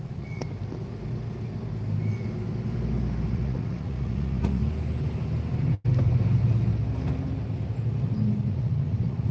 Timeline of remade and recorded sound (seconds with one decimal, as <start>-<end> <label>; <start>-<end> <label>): 0.0-0.4 remade; 0.4-3.3 recorded; 3.3-4.6 remade; 4.6-8.5 recorded; 8.5-9.3 remade